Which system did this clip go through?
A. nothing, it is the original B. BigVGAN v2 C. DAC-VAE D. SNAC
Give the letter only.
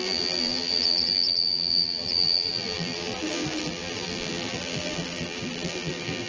B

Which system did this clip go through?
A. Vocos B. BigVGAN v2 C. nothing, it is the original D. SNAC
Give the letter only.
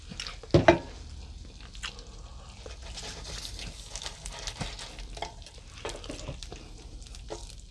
C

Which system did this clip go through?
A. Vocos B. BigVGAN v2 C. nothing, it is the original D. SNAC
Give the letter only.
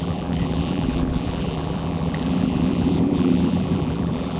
B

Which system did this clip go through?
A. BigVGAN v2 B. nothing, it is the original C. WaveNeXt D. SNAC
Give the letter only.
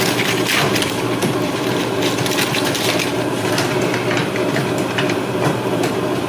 A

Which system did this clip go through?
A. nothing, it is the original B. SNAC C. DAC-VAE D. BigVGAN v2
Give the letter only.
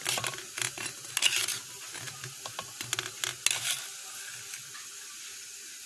A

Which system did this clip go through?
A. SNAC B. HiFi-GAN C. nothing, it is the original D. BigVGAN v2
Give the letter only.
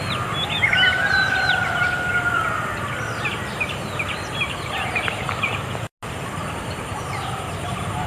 C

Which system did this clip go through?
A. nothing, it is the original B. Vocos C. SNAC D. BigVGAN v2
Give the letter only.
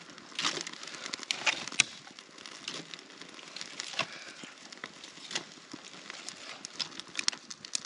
A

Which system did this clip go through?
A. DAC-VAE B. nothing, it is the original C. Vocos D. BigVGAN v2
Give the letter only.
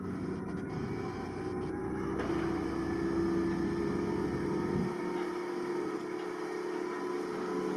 B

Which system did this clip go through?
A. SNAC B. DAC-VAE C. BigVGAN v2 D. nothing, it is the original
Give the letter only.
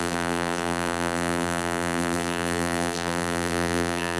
C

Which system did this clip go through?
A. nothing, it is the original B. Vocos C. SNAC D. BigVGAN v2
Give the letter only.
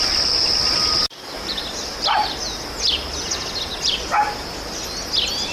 A